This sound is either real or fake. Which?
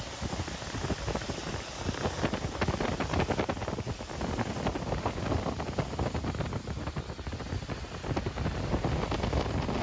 real